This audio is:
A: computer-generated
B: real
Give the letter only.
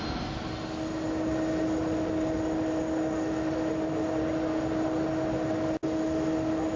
B